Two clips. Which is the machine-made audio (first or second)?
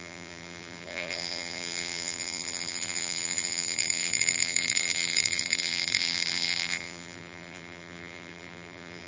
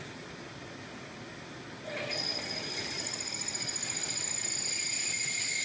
first